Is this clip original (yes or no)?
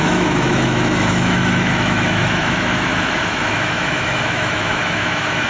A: no